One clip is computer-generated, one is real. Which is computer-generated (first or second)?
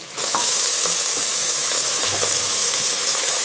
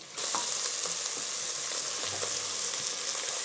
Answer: first